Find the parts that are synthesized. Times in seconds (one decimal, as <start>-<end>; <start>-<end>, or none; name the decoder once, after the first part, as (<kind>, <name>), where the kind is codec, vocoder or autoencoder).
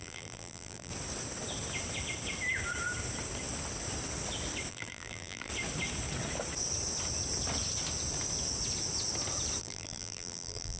0.0-0.9 (vocoder, BigVGAN v2); 4.7-5.5; 9.6-10.8